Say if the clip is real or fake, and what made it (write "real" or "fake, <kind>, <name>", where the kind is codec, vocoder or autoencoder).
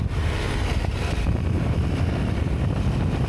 real